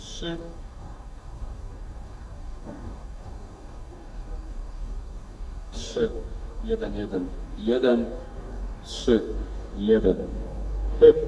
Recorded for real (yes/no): no